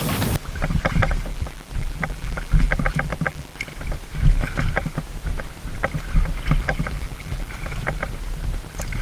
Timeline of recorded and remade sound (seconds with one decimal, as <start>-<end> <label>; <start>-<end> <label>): 0.0-1.3 recorded; 1.3-3.6 remade; 3.6-6.6 recorded; 6.6-7.5 remade; 7.5-9.0 recorded